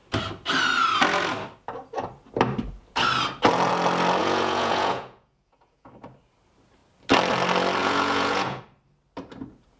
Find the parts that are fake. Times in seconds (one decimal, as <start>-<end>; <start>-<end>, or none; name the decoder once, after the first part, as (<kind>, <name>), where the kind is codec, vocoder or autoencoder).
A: 4.2-5.9 (vocoder, Vocos); 7.8-8.6